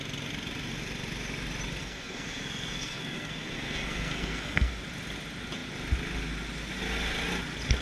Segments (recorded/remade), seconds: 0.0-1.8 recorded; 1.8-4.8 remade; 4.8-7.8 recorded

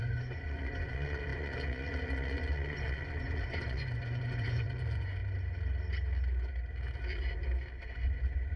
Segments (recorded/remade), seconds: 0.0-5.2 remade; 5.2-7.9 recorded; 7.9-8.6 remade

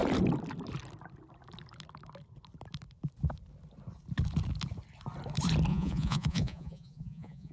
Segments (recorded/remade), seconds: 0.0-5.7 recorded; 5.7-7.5 remade

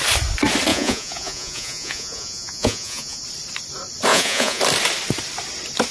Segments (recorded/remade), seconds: 0.0-0.7 recorded; 0.7-3.2 remade; 3.2-4.1 recorded; 4.1-4.6 remade; 4.6-5.9 recorded

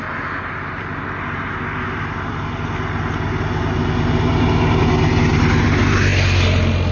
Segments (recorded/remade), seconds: 0.0-6.9 recorded

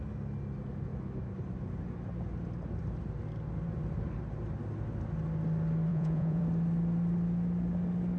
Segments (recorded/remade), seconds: 0.0-5.9 recorded; 5.9-6.4 remade; 6.4-8.2 recorded

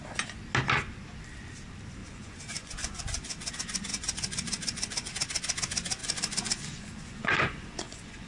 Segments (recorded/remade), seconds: 0.0-2.0 recorded; 2.0-3.5 remade; 3.5-3.9 recorded; 3.9-5.1 remade; 5.1-6.0 recorded; 6.0-8.3 remade